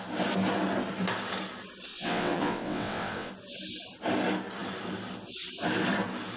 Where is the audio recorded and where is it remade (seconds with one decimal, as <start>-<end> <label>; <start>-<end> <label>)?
0.0-1.9 recorded; 1.9-3.3 remade; 3.3-6.4 recorded